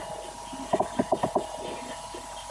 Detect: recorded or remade recorded